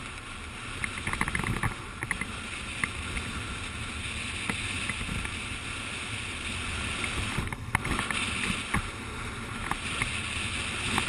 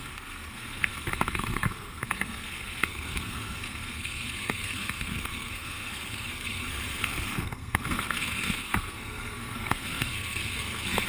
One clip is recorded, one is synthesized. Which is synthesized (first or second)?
second